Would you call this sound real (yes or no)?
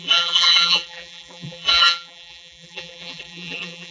no